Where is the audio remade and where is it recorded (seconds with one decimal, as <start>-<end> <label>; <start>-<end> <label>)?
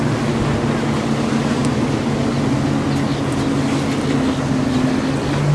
0.0-5.5 recorded